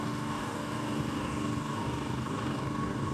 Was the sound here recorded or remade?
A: remade